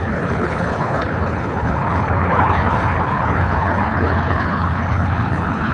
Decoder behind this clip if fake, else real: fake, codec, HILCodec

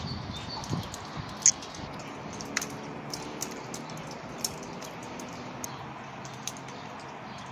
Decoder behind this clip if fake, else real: real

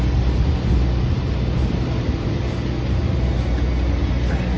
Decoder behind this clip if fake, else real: real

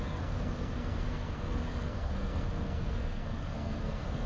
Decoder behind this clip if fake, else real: fake, codec, SNAC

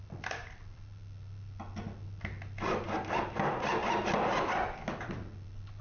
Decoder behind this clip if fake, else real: real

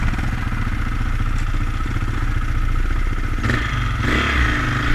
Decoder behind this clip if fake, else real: real